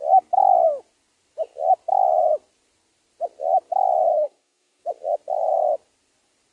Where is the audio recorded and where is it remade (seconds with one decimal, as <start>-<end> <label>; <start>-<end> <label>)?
0.0-4.1 recorded; 4.1-4.8 remade; 4.8-6.5 recorded